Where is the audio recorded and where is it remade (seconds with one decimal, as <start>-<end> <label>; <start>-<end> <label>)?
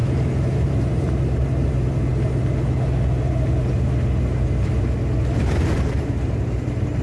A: 0.0-2.1 remade; 2.1-6.3 recorded; 6.3-7.0 remade